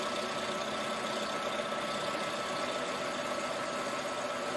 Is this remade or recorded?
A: recorded